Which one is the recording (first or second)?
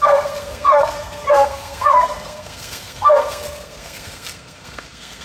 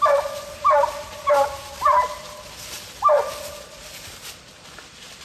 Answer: second